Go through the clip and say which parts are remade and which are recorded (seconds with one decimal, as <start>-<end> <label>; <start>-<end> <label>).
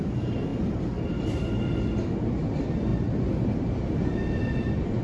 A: 0.0-5.0 recorded